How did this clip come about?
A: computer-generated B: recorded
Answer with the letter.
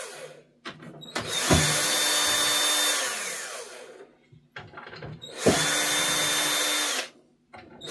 B